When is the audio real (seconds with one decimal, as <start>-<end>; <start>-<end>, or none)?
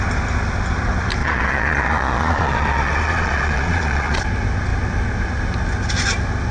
0.0-1.2; 4.2-6.5